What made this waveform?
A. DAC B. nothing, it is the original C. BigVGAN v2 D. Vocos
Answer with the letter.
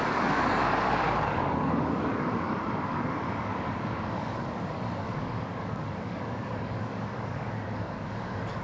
A